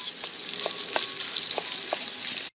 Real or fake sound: real